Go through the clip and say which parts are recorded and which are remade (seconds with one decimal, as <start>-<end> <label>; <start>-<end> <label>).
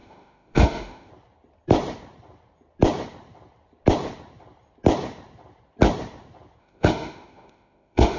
0.0-1.1 remade; 1.1-6.6 recorded; 6.6-8.2 remade